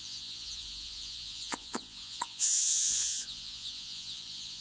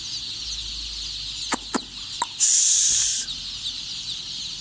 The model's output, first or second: first